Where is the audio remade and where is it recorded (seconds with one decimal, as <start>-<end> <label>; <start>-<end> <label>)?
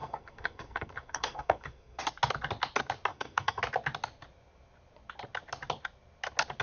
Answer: 0.0-2.0 remade; 2.0-3.1 recorded; 3.1-3.6 remade; 3.6-6.6 recorded